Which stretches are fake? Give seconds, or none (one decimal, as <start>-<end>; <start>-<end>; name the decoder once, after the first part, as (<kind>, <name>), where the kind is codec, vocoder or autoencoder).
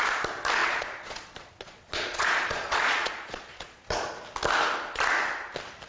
0.6-4.1 (vocoder, Vocos)